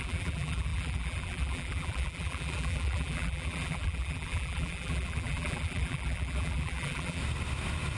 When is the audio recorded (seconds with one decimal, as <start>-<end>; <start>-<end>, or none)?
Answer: 7.2-8.0